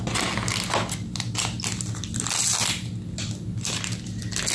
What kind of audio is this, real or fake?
real